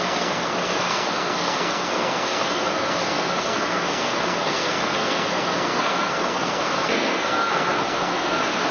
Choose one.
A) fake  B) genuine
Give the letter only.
A